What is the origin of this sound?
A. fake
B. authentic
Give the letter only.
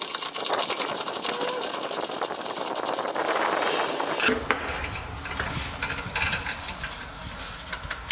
B